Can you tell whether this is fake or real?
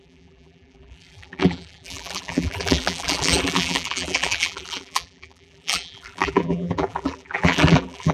fake